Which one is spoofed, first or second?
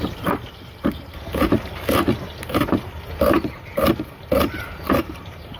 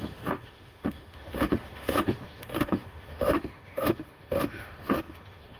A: second